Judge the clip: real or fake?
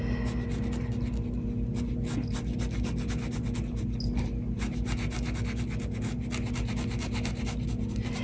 real